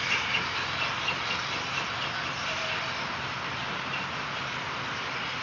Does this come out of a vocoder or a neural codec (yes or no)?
no